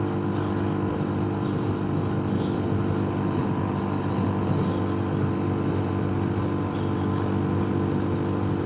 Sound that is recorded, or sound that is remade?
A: recorded